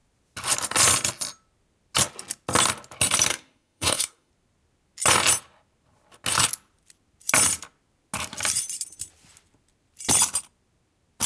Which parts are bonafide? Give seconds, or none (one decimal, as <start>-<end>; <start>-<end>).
0.0-3.3; 4.3-11.3